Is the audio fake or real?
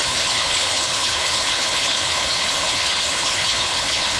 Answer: fake